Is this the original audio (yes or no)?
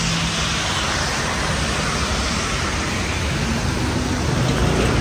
yes